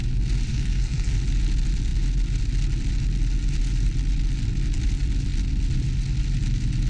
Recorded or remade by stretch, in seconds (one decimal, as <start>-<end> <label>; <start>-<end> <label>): 0.0-0.5 recorded; 0.5-1.1 remade; 1.1-6.9 recorded